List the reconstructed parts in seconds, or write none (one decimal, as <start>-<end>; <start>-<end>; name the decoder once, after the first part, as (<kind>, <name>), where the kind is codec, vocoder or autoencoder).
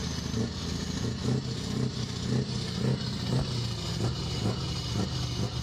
none